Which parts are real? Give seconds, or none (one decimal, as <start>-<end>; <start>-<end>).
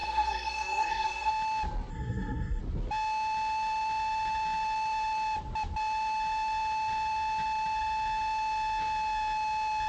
1.3-1.9; 2.6-9.9